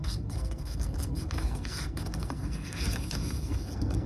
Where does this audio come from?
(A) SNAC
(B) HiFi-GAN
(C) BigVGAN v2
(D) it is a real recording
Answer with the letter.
A